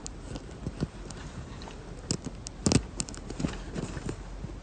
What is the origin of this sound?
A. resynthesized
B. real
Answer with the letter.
B